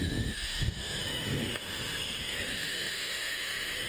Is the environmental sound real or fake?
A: fake